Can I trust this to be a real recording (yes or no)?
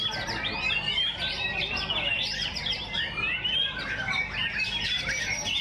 no